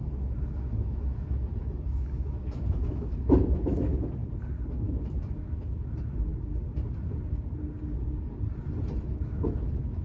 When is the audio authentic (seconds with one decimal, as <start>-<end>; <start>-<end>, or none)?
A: 4.2-4.9; 6.3-9.0